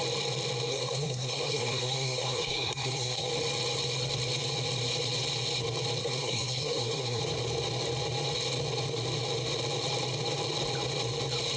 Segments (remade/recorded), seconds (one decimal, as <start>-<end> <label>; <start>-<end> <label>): 0.0-0.7 recorded; 0.7-3.3 remade; 3.3-6.0 recorded; 6.0-7.2 remade; 7.2-11.6 recorded